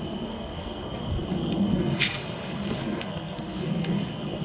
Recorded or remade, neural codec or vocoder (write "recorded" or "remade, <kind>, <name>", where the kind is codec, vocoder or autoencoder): remade, codec, SNAC